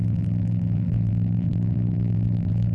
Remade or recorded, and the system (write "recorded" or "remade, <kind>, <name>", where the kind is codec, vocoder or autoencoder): remade, vocoder, BigVGAN v2